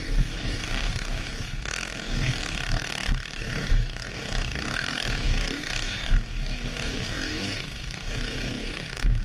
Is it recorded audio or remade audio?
remade